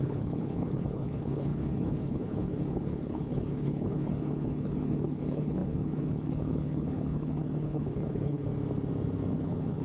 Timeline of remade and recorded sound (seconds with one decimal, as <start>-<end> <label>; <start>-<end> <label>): 0.0-8.5 remade; 8.5-9.4 recorded; 9.4-9.8 remade